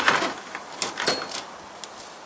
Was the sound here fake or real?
real